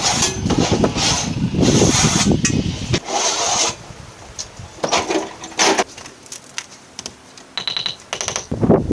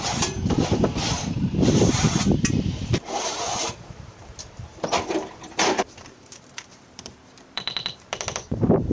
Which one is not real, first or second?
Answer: second